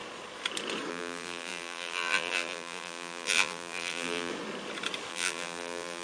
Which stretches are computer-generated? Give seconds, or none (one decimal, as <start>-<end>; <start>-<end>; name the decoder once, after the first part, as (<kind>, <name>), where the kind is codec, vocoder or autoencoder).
0.9-4.3 (vocoder, BigVGAN v2); 5.1-6.0